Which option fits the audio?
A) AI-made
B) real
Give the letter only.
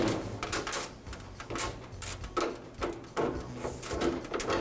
B